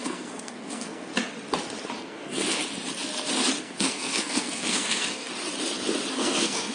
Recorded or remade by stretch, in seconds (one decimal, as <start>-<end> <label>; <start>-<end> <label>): 0.0-1.1 remade; 1.1-2.0 recorded; 2.0-2.6 remade; 2.6-3.6 recorded; 3.6-5.3 remade; 5.3-6.1 recorded; 6.1-6.7 remade